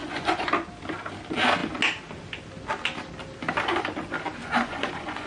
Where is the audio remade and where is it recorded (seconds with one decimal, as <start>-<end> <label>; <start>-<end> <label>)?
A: 0.0-0.5 remade; 0.5-4.4 recorded; 4.4-5.3 remade